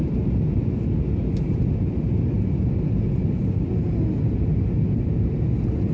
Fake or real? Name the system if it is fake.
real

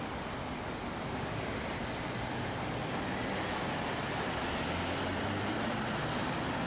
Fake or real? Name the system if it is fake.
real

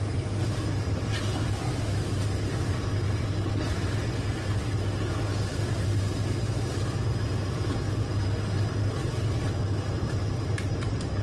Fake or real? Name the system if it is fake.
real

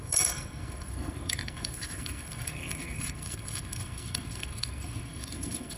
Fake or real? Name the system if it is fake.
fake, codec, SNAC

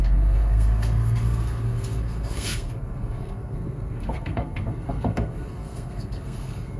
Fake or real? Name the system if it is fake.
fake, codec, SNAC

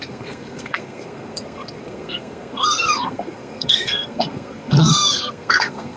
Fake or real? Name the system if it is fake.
fake, codec, SNAC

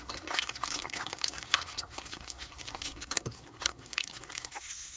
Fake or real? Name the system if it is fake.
fake, codec, SNAC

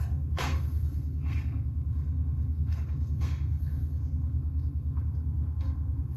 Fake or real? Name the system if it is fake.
fake, codec, SNAC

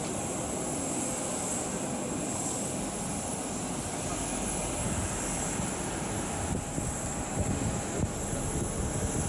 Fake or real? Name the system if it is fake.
real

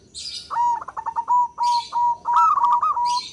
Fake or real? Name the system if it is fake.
real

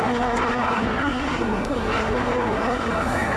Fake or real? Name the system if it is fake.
fake, codec, SNAC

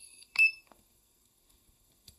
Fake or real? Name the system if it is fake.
fake, codec, SNAC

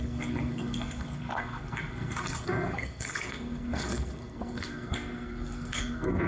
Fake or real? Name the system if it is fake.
fake, codec, SNAC